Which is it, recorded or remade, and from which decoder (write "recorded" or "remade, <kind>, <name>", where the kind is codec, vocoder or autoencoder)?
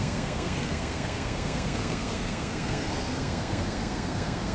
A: remade, codec, SNAC